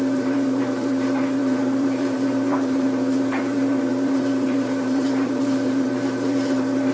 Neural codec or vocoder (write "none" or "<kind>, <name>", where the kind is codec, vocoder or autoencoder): vocoder, BigVGAN v2